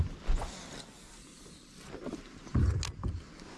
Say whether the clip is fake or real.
real